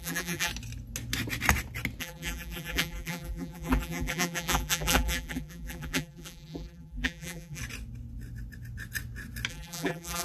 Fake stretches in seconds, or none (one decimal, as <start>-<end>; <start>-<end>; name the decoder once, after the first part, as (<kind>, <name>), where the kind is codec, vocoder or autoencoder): 0.0-0.5 (vocoder, BigVGAN v2); 2.0-7.6; 9.5-10.2